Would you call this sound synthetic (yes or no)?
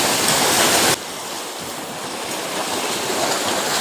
no